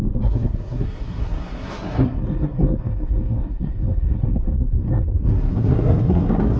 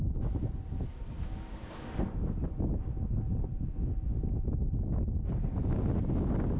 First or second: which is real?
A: second